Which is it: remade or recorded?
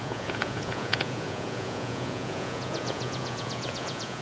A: remade